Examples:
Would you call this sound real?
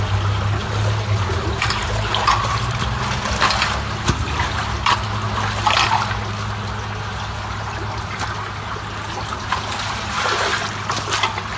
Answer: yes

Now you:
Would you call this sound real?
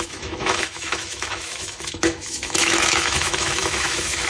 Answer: no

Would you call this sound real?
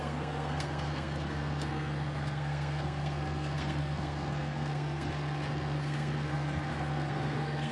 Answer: no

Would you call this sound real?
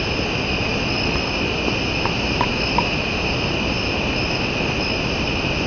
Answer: yes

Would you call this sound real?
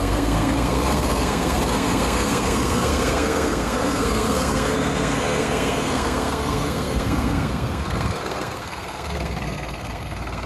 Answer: no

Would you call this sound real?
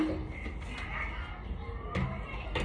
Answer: yes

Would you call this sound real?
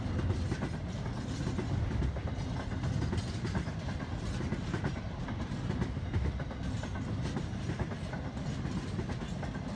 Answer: yes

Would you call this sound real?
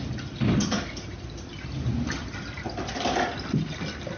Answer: yes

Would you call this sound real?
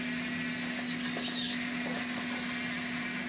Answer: yes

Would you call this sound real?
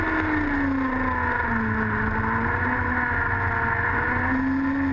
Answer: yes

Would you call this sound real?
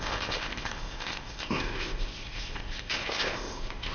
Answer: no